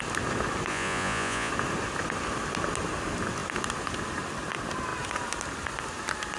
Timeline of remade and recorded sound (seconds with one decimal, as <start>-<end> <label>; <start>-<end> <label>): 0.0-0.7 recorded; 0.7-1.5 remade; 1.5-6.4 recorded